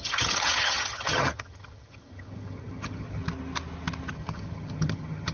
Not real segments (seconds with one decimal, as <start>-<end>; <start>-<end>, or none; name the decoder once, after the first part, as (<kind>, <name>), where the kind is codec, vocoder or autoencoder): 0.0-3.2 (vocoder, HiFi-GAN); 4.1-5.3